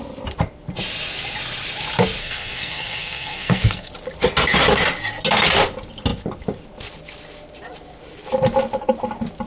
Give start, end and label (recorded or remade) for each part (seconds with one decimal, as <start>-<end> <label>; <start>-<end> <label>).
0.0-2.2 recorded; 2.2-3.9 remade; 3.9-9.5 recorded